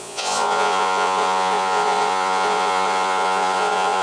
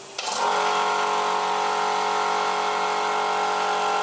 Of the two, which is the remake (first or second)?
first